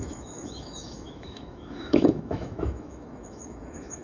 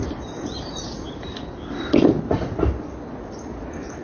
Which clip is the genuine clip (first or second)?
second